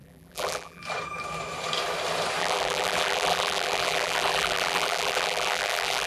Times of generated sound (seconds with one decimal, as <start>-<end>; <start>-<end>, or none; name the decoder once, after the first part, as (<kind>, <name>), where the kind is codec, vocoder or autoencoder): 0.0-0.8 (vocoder, BigVGAN v2); 2.4-6.1